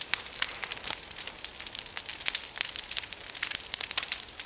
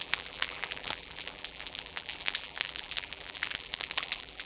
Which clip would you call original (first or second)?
first